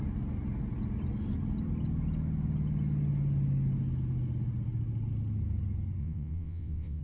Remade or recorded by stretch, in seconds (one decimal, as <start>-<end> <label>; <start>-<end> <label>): 0.0-6.0 recorded; 6.0-7.0 remade

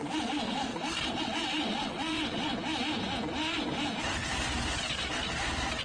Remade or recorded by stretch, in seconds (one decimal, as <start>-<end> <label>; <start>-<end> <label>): 0.0-0.7 remade; 0.7-1.2 recorded; 1.2-2.5 remade; 2.5-5.8 recorded

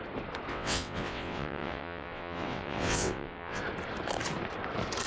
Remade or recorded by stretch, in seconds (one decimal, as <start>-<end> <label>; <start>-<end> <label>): 0.0-0.5 recorded; 0.5-3.6 remade; 3.6-5.1 recorded

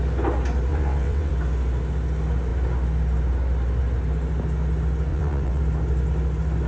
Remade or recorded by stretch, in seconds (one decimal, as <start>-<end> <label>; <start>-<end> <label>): 0.0-0.7 recorded; 0.7-1.3 remade; 1.3-5.1 recorded; 5.1-5.6 remade; 5.6-6.7 recorded

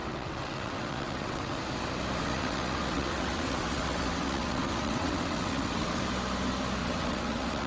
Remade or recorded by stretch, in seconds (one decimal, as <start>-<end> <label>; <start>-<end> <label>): 0.0-1.6 remade; 1.6-2.2 recorded; 2.2-6.0 remade; 6.0-6.8 recorded; 6.8-7.7 remade